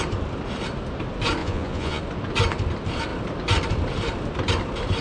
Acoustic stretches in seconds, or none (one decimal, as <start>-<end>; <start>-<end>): 0.0-1.4; 2.0-5.0